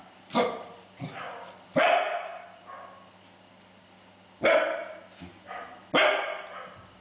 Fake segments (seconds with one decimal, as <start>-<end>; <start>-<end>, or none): 0.0-2.3; 6.5-7.0